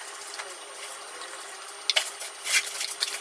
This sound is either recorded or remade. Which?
recorded